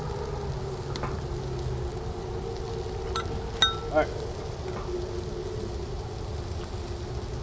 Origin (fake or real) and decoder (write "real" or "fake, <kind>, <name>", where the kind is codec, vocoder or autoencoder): real